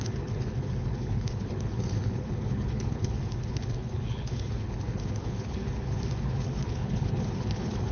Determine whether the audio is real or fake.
fake